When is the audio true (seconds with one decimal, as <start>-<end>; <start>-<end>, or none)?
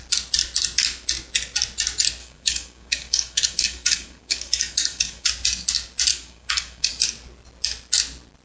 0.0-2.2; 5.3-6.1; 6.9-8.4